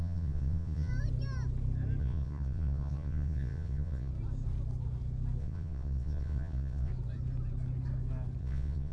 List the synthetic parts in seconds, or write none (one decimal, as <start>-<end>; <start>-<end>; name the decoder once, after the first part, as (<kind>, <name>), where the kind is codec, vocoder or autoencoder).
0.0-0.9 (vocoder, Vocos); 2.0-4.1; 5.4-6.9; 8.4-8.9

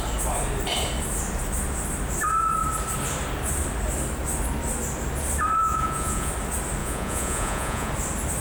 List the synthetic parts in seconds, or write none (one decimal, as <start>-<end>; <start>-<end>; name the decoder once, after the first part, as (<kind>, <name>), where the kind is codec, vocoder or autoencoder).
5.6-6.3 (vocoder, Vocos); 6.8-7.9

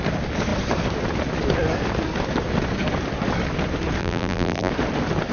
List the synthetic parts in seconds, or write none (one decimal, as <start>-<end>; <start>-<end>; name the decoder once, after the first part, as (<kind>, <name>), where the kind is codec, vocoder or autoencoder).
4.0-4.7 (vocoder, BigVGAN v2)

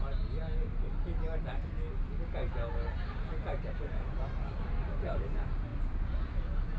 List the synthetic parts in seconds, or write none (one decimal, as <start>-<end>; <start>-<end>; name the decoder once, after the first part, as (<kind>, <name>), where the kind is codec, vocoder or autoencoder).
none

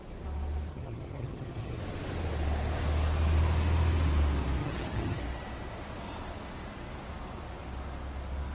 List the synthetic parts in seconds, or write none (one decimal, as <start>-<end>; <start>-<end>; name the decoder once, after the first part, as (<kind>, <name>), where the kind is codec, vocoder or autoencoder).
0.7-1.8 (vocoder, HiFi-GAN); 4.6-5.2

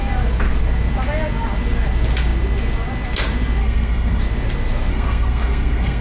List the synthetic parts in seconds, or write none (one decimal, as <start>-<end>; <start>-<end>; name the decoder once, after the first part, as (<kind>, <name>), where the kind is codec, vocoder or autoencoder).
3.6-4.2 (codec, SNAC); 4.9-6.0

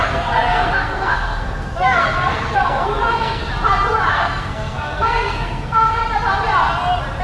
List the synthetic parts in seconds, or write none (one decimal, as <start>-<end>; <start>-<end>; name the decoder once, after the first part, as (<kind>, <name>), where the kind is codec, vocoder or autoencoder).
0.0-3.4 (codec, SNAC); 4.1-6.0

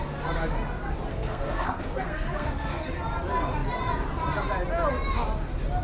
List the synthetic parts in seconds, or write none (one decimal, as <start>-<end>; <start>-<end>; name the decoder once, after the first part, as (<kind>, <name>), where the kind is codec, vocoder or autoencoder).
1.1-2.9 (codec, SNAC)